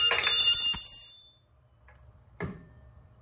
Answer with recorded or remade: remade